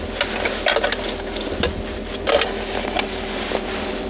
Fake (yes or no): no